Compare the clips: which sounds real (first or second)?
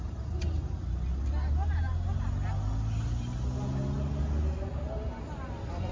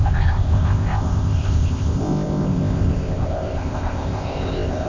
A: first